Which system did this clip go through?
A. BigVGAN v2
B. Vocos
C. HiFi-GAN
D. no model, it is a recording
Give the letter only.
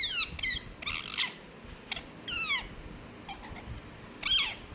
D